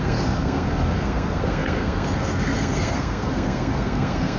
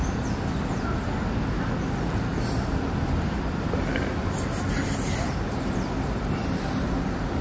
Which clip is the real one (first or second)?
second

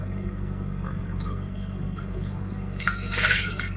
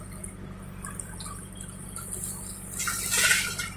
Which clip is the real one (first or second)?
second